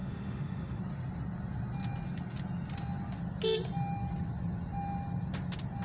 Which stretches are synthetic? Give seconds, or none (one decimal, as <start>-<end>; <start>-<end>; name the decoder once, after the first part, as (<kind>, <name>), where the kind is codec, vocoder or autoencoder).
0.0-0.8 (autoencoder, DAC-VAE)